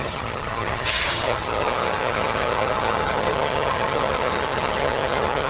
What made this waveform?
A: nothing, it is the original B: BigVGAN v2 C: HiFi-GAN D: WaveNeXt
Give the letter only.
C